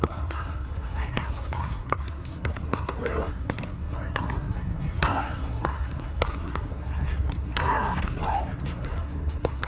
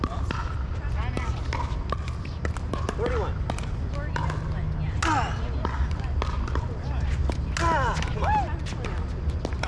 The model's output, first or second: first